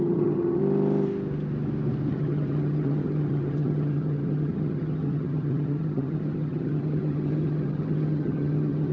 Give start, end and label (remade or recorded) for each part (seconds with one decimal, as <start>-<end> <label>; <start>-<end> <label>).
0.0-0.6 remade; 0.6-2.1 recorded; 2.1-8.9 remade